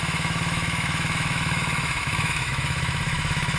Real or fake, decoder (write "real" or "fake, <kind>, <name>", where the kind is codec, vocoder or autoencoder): fake, autoencoder, DAC-VAE